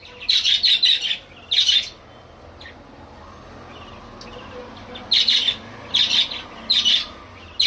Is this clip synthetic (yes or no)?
no